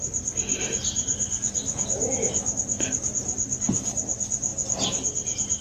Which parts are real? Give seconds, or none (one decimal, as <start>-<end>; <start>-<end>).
0.0-5.6